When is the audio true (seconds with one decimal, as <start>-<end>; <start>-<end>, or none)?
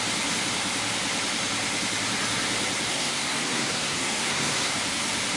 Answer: 0.0-2.9; 4.7-5.4